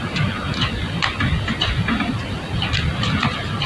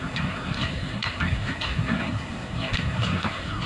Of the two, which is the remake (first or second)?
second